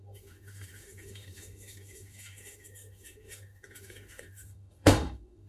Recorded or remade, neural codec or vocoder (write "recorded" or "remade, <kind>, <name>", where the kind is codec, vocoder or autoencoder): remade, autoencoder, DAC-VAE